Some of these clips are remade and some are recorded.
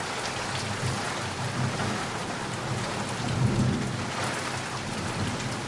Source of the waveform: recorded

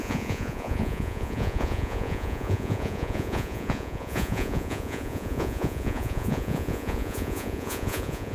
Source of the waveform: remade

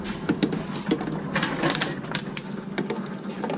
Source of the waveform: recorded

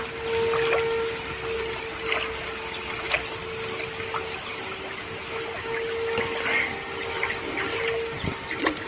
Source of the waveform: recorded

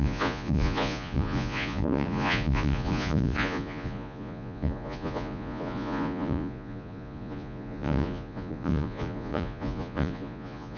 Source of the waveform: remade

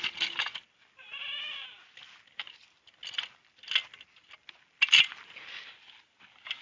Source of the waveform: recorded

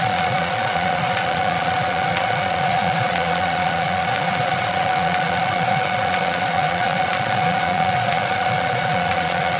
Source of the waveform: remade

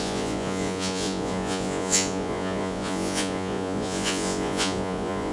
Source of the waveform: remade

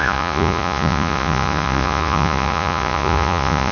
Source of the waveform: remade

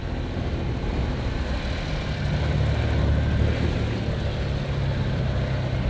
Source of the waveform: recorded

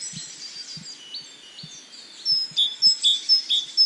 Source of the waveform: recorded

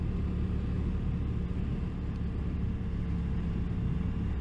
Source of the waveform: recorded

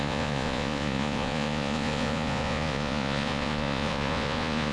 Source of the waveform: remade